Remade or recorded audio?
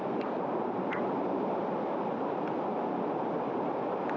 recorded